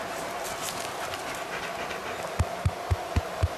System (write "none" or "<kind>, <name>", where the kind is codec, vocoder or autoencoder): none